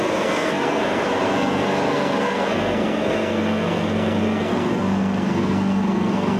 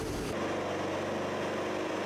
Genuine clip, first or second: second